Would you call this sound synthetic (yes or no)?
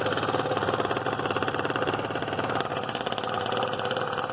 no